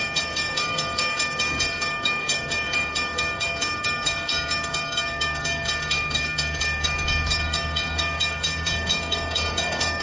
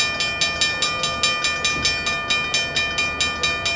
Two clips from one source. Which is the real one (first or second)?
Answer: second